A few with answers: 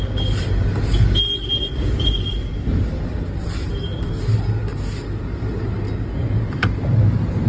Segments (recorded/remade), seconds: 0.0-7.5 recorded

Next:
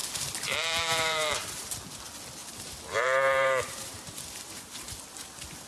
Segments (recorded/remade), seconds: 0.0-1.7 remade; 1.7-2.4 recorded; 2.4-4.9 remade; 4.9-5.7 recorded

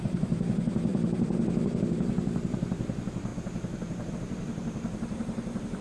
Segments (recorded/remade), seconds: 0.0-5.8 remade